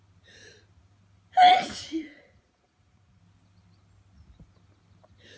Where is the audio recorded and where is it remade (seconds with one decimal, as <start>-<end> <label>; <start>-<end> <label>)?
0.0-1.5 recorded; 1.5-3.2 remade; 3.2-5.4 recorded